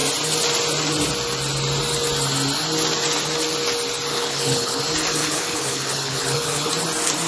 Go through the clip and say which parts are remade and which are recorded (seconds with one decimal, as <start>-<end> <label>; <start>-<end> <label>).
0.0-4.1 recorded; 4.1-4.8 remade; 4.8-5.2 recorded; 5.2-6.7 remade; 6.7-7.3 recorded